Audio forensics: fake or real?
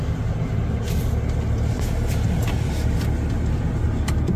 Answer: real